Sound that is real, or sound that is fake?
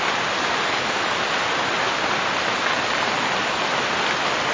real